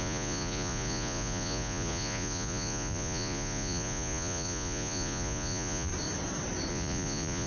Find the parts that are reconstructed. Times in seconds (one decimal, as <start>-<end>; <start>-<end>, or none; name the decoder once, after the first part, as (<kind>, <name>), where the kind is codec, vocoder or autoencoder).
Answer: 0.0-5.9 (vocoder, Vocos); 6.7-7.5